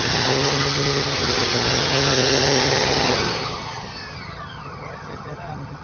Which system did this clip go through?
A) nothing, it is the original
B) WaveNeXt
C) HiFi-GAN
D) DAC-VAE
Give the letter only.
C